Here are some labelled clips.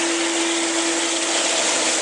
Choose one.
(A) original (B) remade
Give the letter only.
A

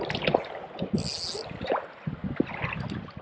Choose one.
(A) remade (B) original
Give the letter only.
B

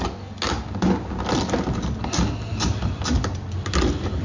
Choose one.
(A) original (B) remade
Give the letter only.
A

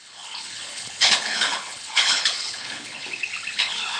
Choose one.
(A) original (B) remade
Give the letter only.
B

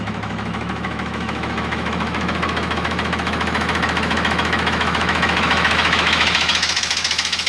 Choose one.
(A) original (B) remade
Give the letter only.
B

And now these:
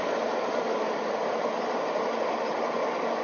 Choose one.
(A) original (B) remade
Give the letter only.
A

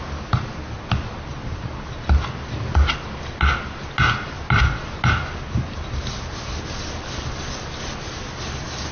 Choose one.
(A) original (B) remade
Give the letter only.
A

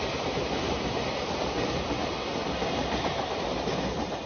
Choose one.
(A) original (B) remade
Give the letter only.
A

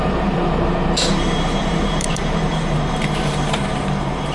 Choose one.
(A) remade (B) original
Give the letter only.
A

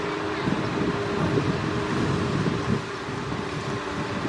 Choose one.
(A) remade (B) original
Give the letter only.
B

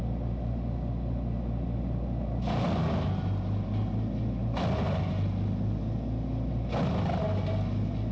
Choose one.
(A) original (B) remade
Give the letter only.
A